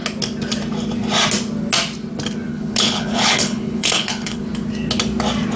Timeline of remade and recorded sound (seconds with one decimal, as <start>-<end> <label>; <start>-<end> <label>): 0.0-2.5 recorded; 2.5-4.4 remade; 4.4-5.6 recorded